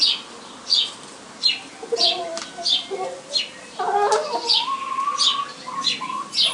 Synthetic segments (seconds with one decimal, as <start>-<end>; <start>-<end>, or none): none